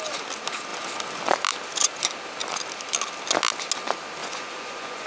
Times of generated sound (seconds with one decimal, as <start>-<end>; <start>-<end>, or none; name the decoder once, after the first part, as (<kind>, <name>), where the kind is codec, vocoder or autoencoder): 4.2-5.1 (vocoder, Vocos)